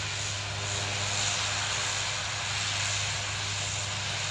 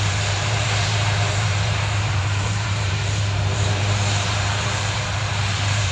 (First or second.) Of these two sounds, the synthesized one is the second